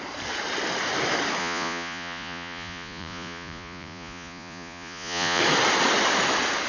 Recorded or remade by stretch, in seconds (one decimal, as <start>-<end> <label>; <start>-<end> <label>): 0.0-1.4 recorded; 1.4-5.4 remade; 5.4-6.7 recorded